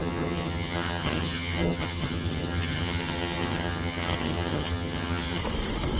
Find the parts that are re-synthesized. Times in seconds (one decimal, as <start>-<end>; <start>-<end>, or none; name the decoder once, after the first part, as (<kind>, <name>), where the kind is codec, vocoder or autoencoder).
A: 0.0-5.4 (vocoder, HiFi-GAN)